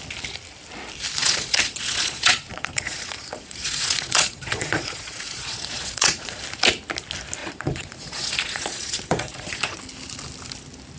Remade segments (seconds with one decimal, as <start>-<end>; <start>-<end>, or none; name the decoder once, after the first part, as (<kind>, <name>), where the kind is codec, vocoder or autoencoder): 1.2-6.4 (vocoder, Vocos); 7.4-9.8